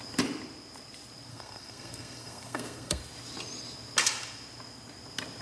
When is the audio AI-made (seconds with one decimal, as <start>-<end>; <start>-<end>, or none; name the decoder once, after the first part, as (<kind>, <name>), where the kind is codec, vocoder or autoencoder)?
1.3-3.0 (codec, SNAC)